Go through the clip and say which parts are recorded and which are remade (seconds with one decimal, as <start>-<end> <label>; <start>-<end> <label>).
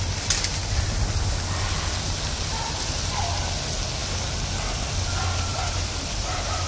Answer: 0.0-2.5 recorded; 2.5-3.1 remade; 3.1-5.5 recorded; 5.5-6.7 remade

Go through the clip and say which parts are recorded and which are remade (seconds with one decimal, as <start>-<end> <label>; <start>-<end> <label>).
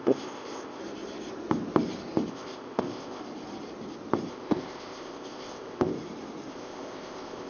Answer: 0.0-0.8 remade; 0.8-2.3 recorded; 2.3-3.2 remade; 3.2-4.3 recorded; 4.3-5.9 remade; 5.9-6.5 recorded; 6.5-7.5 remade